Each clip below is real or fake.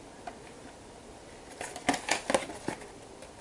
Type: real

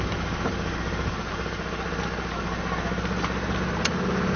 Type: real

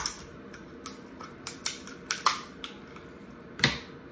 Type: real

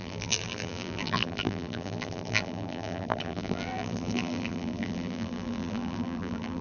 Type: fake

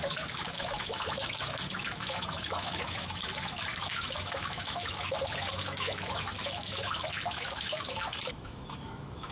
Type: fake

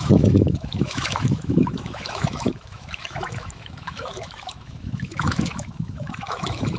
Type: fake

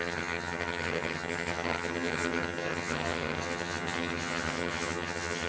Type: fake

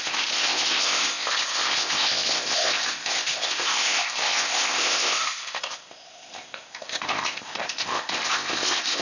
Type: fake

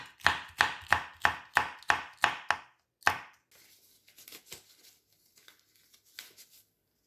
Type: real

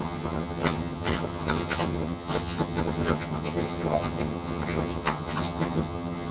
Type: fake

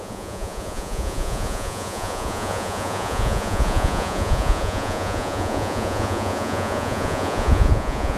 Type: fake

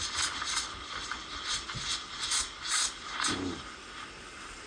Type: real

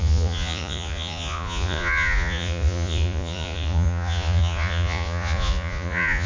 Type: fake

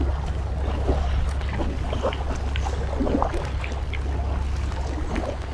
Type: real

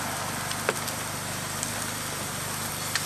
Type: real